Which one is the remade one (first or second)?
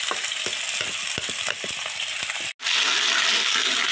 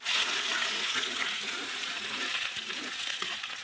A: second